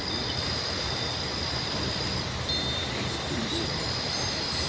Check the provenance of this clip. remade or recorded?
recorded